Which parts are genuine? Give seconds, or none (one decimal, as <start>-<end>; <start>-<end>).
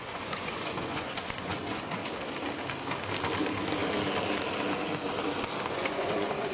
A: 2.0-5.7